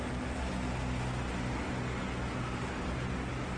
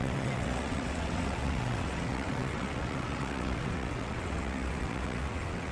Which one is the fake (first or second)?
second